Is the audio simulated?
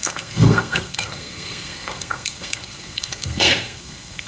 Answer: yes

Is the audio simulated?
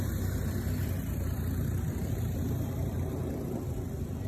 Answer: yes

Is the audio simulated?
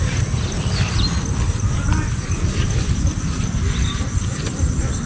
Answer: no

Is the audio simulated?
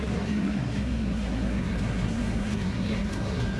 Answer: yes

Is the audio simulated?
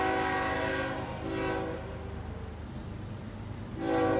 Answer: no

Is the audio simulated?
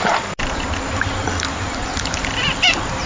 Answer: yes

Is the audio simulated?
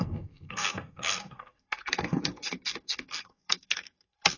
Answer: yes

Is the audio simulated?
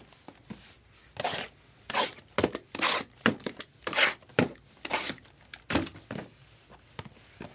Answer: no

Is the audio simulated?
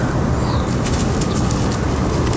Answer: no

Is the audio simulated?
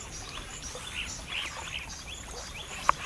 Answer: no